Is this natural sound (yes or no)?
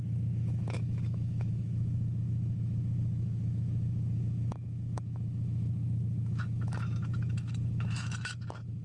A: no